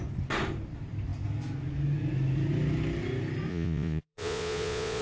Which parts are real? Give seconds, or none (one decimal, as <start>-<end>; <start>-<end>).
0.0-3.5